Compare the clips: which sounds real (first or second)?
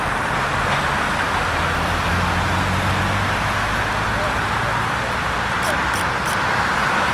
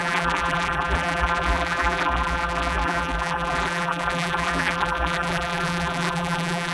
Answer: first